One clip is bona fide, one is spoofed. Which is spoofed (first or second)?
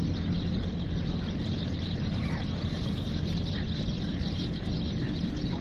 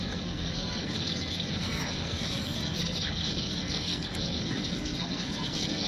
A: second